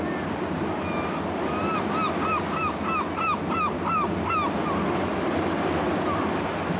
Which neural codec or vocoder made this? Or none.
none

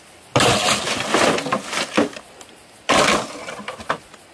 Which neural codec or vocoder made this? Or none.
none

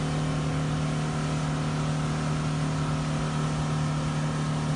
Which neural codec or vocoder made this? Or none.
none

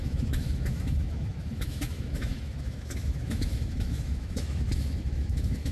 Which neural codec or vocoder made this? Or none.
autoencoder, DAC-VAE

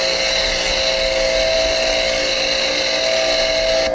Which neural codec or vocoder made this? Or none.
none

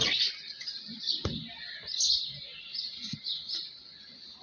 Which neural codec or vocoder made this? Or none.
none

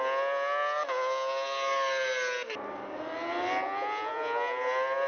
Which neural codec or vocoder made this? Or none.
none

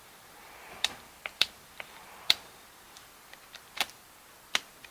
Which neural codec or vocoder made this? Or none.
vocoder, BigVGAN v2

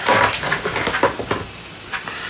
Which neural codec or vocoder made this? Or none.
none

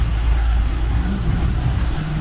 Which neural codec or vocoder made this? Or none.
codec, SNAC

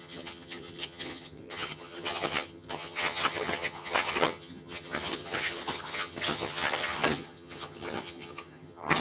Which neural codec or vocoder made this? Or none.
vocoder, HiFi-GAN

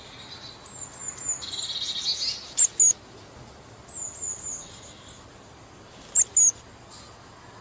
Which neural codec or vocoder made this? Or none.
none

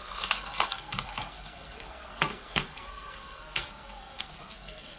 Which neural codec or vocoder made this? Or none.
codec, SNAC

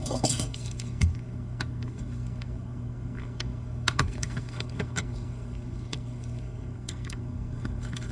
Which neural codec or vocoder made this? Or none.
codec, SNAC